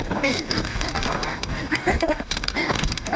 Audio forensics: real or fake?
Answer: fake